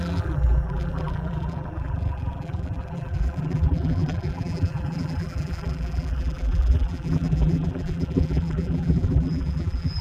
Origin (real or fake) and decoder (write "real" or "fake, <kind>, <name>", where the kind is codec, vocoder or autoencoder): fake, vocoder, BigVGAN v2